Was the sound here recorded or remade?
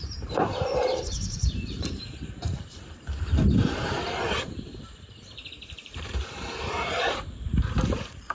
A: remade